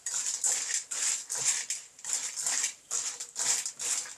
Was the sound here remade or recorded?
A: recorded